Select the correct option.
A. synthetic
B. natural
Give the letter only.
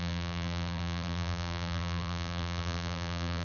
A